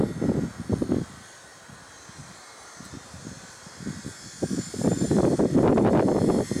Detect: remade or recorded recorded